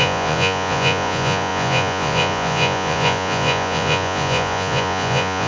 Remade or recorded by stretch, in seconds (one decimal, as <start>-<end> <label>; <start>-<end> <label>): 0.0-5.5 remade